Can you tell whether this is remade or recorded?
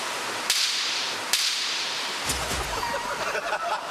recorded